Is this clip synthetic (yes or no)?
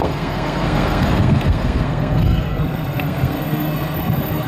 yes